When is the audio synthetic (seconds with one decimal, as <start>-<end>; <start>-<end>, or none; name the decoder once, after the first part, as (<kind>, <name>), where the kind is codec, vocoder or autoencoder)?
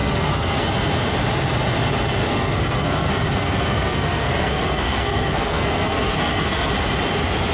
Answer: 0.0-0.7 (codec, SNAC); 2.2-6.7